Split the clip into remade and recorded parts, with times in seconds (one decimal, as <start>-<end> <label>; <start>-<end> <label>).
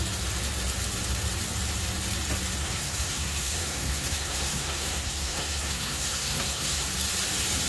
0.0-2.6 recorded; 2.6-6.9 remade; 6.9-7.7 recorded